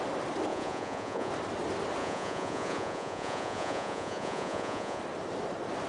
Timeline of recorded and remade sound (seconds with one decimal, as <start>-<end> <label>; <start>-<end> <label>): 0.0-0.5 recorded; 0.5-1.3 remade; 1.3-2.0 recorded; 2.0-5.0 remade; 5.0-5.9 recorded